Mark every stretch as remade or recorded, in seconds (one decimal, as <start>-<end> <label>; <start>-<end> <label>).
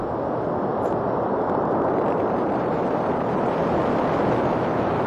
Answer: 0.0-0.7 recorded; 0.7-3.8 remade; 3.8-5.1 recorded